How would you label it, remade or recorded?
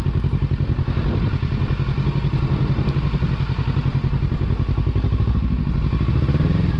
recorded